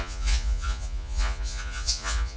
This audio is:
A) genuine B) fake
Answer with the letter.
B